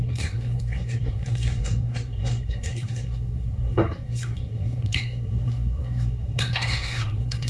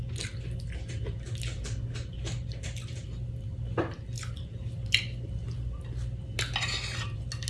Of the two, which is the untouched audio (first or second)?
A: second